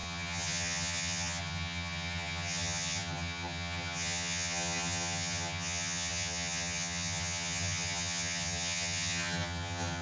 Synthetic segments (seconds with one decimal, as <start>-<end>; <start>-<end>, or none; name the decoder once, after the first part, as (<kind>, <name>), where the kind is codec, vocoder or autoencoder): 0.0-10.0 (vocoder, HiFi-GAN)